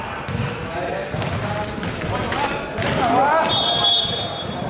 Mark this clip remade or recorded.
recorded